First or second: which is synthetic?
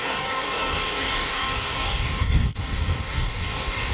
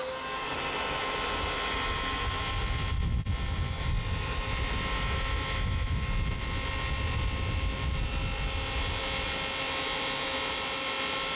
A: first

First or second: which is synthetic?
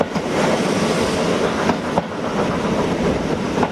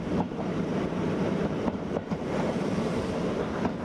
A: second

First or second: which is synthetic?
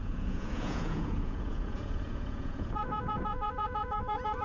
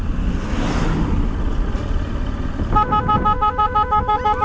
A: first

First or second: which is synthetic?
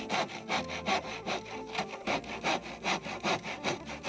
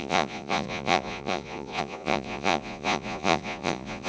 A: second